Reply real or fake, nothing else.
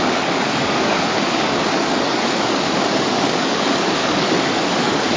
fake